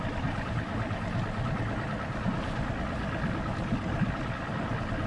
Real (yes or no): yes